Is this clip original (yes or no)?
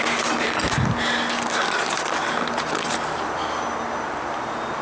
yes